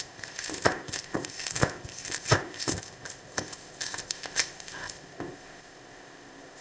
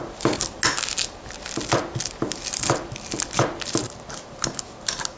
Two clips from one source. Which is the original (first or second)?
second